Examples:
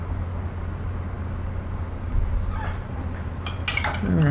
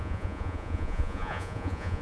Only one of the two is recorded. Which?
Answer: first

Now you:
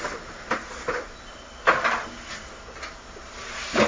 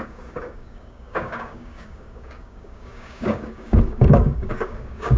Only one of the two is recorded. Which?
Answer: first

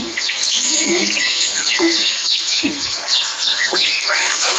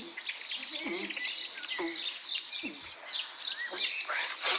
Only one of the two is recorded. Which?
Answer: second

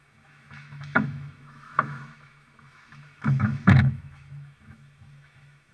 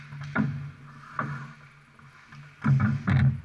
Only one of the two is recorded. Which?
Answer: second